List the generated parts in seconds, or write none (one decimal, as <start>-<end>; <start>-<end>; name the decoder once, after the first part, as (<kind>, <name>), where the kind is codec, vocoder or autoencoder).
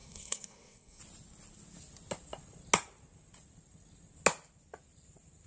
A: 0.0-1.0 (codec, SNAC)